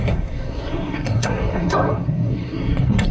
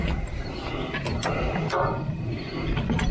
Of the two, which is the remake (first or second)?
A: first